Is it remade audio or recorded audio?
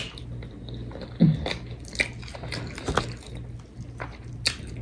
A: recorded